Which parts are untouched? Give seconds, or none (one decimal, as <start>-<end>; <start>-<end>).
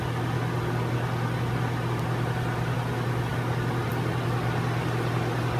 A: 0.0-5.6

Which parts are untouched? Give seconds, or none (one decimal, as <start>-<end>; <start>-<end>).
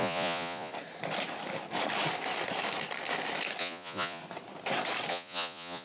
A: 0.7-3.6; 4.2-5.1